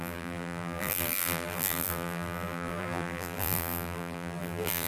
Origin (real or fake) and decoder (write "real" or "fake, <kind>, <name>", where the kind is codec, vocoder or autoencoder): fake, vocoder, BigVGAN v2